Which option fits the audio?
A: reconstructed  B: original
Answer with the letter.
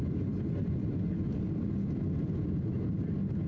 B